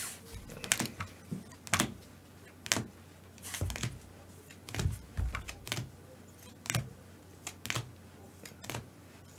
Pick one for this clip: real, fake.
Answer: real